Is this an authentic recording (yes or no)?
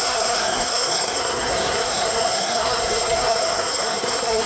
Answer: no